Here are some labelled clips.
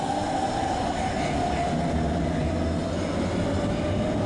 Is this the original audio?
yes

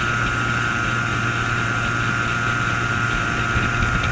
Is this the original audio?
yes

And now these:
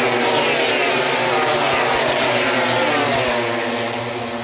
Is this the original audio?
yes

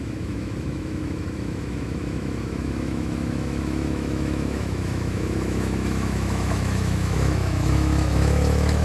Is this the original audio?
no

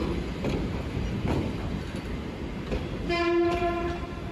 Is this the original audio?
yes